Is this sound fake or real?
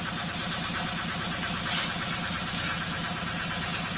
real